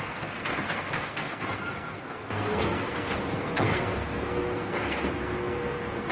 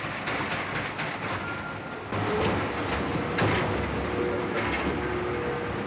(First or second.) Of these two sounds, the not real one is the first